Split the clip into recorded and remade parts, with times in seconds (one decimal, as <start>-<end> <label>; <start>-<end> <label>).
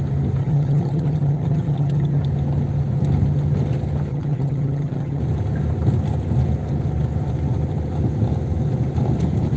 0.0-0.4 recorded; 0.4-2.2 remade; 2.2-4.1 recorded; 4.1-5.2 remade; 5.2-9.6 recorded